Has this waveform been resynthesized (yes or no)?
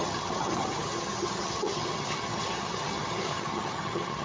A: yes